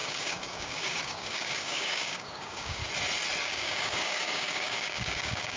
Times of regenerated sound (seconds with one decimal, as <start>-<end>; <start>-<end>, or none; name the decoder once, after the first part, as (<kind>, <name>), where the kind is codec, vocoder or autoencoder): 0.0-2.8 (codec, DAC); 3.4-5.6